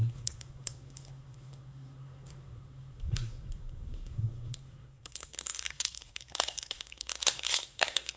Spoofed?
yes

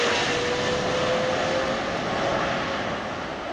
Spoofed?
no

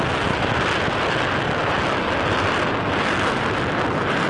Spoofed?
no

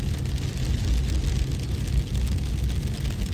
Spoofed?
no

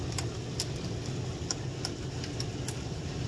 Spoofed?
no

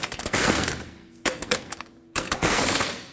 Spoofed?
yes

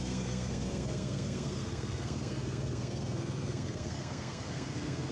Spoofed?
yes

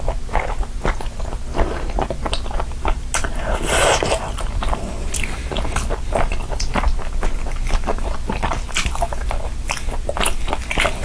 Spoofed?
no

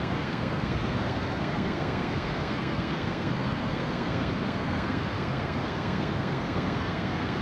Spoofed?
yes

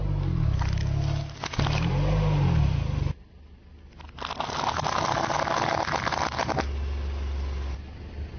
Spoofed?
no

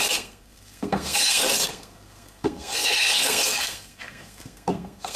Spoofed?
yes